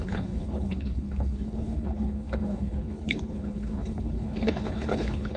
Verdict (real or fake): fake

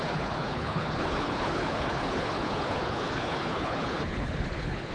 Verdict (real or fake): fake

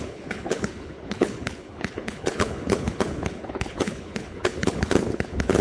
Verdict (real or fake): fake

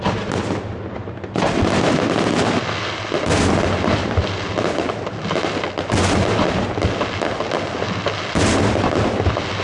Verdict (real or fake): real